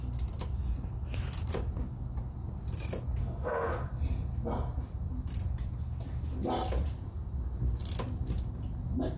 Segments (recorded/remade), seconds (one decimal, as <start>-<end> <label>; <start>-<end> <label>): 0.0-3.2 recorded; 3.2-3.9 remade; 3.9-9.2 recorded